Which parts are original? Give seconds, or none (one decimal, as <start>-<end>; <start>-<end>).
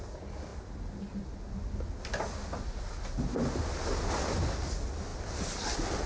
0.0-6.1